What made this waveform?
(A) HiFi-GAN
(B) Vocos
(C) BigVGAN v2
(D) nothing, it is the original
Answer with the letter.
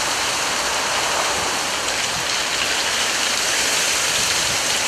D